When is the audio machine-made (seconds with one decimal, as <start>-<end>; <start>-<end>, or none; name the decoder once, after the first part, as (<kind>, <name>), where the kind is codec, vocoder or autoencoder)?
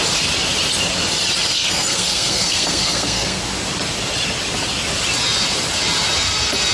1.5-3.4 (codec, SNAC)